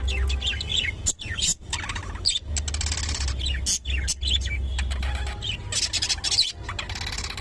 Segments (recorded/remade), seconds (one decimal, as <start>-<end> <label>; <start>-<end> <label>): 0.0-0.7 recorded; 0.7-2.1 remade; 2.1-7.4 recorded